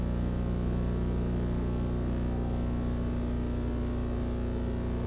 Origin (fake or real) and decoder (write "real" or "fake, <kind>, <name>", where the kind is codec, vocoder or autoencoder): real